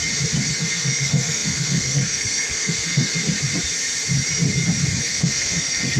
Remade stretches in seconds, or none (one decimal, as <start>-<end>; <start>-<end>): 0.5-3.1; 5.0-6.0